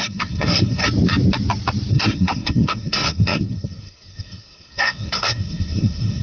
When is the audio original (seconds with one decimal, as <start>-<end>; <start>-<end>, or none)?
0.8-1.9